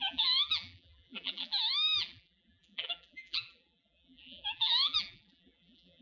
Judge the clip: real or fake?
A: fake